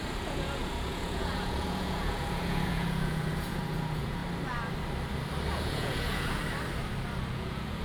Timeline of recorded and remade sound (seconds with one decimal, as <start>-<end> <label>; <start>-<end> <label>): 0.0-4.2 remade; 4.2-5.5 recorded; 5.5-6.4 remade; 6.4-7.3 recorded; 7.3-7.8 remade